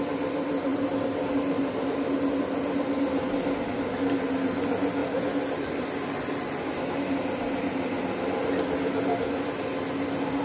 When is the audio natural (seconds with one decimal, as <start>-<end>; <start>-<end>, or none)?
0.0-10.4

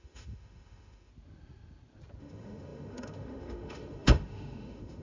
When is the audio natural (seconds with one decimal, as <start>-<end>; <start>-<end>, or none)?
1.1-2.2

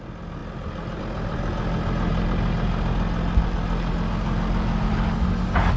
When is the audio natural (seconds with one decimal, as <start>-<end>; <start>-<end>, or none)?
0.0-5.8

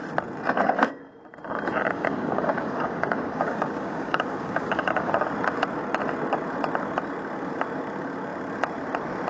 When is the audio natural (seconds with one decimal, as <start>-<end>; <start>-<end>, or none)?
0.0-1.8; 5.1-9.3

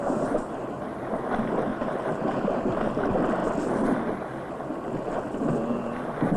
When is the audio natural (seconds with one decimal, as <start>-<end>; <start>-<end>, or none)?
0.0-1.7; 2.6-6.4

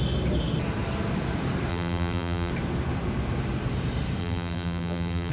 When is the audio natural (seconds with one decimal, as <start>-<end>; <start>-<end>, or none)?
0.0-1.7; 2.5-4.2

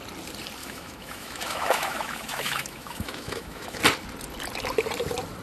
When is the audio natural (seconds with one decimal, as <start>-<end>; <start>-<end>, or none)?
0.0-0.6; 3.8-5.4

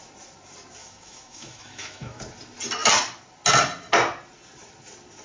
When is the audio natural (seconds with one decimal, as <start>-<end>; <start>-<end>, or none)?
0.0-0.8; 2.2-5.2